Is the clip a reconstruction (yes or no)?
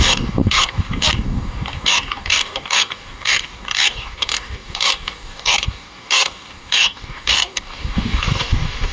yes